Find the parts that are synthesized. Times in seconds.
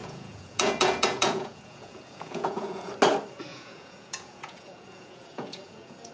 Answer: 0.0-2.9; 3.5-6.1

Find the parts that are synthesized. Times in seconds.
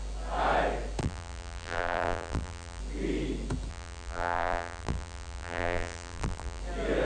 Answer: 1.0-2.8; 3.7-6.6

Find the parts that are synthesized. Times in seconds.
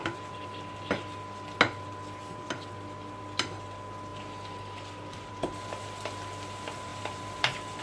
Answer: 4.1-5.3; 6.9-7.8